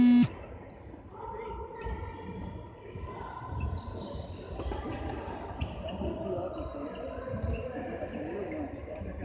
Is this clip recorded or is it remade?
recorded